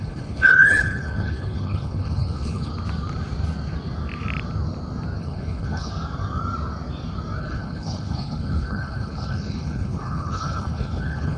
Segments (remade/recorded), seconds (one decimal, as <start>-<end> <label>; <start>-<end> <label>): 0.0-2.7 remade; 2.7-5.2 recorded; 5.2-5.9 remade; 5.9-7.4 recorded; 7.4-11.4 remade